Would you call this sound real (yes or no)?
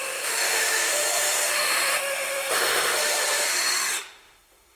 no